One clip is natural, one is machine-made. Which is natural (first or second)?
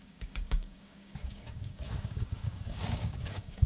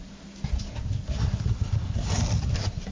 second